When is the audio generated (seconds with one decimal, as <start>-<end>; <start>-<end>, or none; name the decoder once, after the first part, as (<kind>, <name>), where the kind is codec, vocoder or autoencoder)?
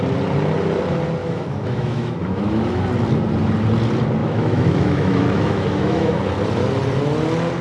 1.2-2.8 (autoencoder, DAC-VAE); 4.2-6.2